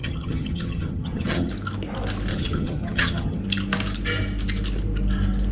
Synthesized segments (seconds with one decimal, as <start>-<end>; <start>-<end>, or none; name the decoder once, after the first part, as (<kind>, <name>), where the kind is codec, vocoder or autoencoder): 0.0-1.5 (vocoder, HiFi-GAN); 2.3-3.4